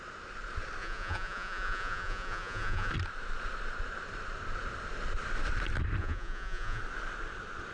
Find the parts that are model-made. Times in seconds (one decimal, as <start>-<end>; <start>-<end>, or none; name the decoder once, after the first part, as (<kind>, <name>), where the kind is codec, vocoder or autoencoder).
0.8-2.9 (vocoder, Vocos); 6.0-6.8